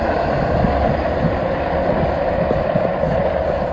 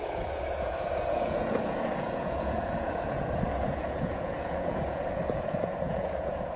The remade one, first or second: second